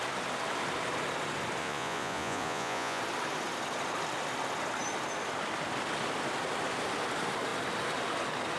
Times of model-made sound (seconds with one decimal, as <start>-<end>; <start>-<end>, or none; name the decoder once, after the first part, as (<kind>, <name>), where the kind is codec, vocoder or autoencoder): 1.6-3.0 (vocoder, Vocos)